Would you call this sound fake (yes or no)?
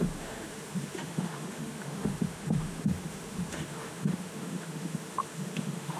yes